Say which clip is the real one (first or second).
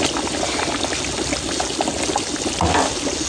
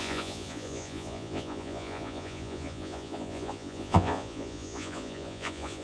first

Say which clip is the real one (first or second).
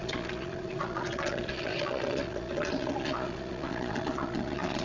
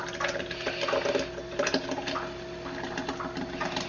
second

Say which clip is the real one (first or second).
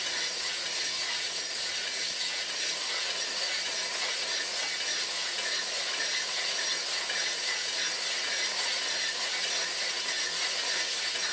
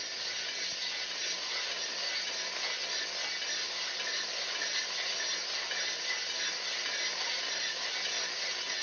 second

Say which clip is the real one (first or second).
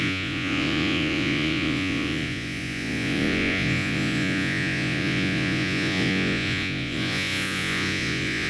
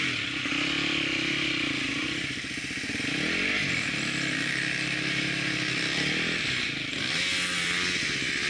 second